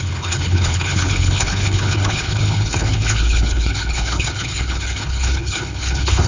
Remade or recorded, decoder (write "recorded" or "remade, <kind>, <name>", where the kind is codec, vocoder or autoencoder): remade, codec, HILCodec